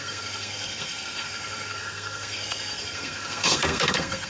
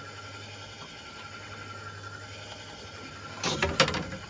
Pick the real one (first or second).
second